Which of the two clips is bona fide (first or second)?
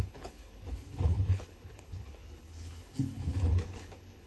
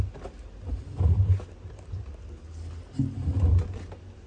second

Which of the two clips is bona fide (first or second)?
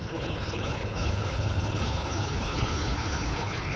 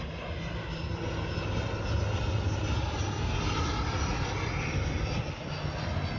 second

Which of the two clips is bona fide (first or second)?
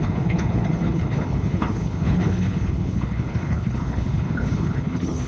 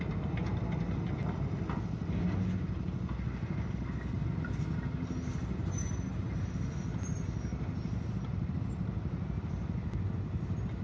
second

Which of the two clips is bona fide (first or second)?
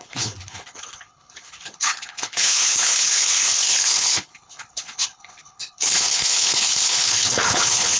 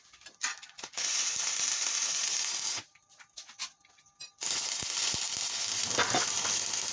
second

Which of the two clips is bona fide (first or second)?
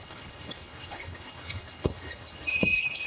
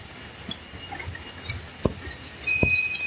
second